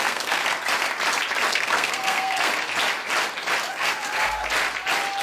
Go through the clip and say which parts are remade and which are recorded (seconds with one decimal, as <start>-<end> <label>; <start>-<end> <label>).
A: 0.0-0.4 remade; 0.4-1.5 recorded; 1.5-2.5 remade; 2.5-3.7 recorded; 3.7-4.4 remade; 4.4-5.2 recorded